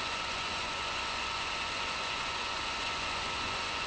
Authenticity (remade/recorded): remade